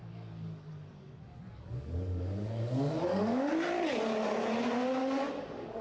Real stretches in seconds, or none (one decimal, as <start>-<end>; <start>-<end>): 3.5-5.0